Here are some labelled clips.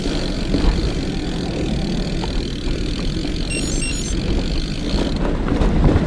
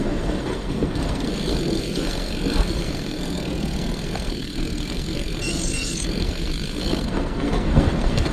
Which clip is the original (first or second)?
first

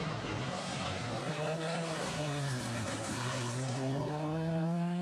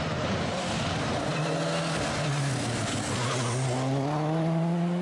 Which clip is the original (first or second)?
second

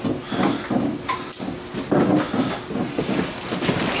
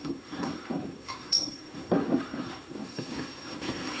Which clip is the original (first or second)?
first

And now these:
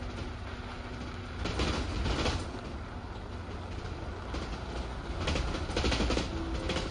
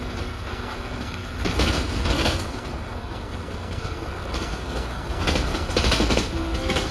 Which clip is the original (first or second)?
first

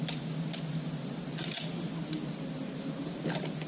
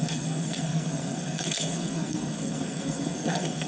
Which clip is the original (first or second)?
first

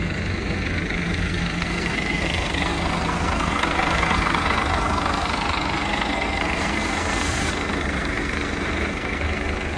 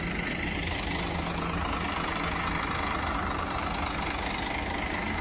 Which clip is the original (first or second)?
second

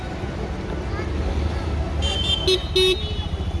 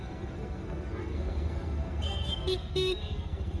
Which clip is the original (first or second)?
first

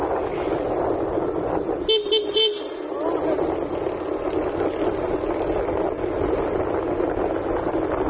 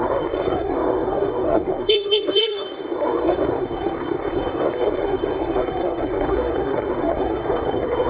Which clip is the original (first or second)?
first